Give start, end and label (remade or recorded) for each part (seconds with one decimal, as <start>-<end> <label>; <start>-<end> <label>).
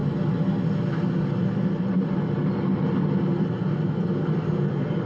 0.0-5.1 recorded